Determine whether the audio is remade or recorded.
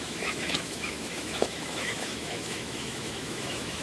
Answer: remade